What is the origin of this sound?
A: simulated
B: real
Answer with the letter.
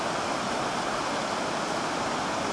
B